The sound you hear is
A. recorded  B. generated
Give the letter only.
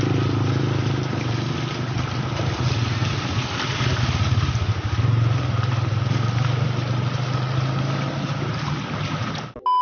A